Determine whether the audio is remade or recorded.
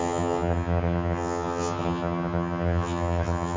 remade